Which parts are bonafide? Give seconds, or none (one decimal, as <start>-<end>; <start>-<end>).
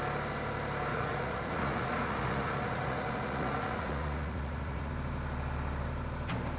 0.0-0.9; 4.9-6.6